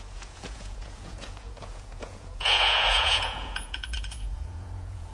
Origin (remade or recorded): remade